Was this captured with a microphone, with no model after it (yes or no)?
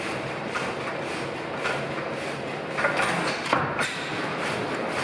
yes